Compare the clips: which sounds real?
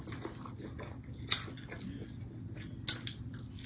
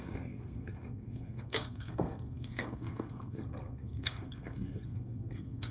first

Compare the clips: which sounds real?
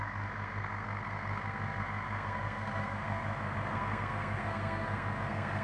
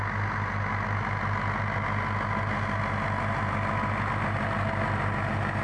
second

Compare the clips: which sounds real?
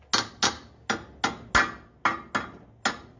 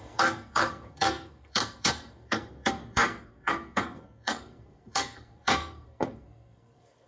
first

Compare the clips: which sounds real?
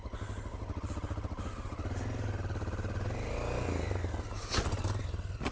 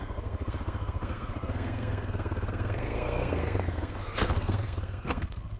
first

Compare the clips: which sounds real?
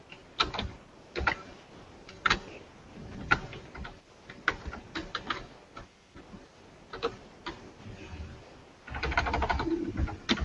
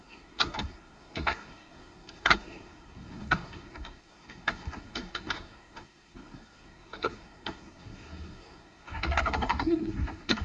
first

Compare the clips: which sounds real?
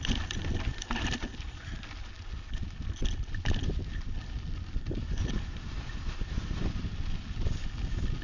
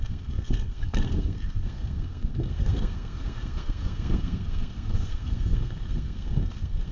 first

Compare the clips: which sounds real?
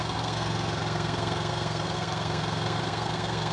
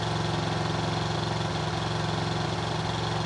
second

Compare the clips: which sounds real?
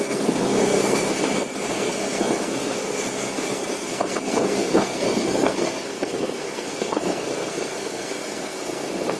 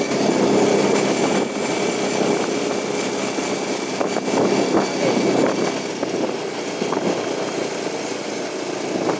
second